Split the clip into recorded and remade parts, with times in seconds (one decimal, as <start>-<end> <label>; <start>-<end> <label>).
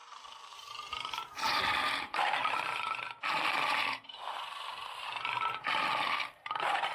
0.0-0.9 remade; 0.9-1.5 recorded; 1.5-5.1 remade; 5.1-6.9 recorded